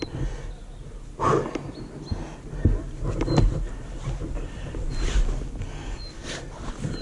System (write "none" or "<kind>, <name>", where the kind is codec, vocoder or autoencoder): none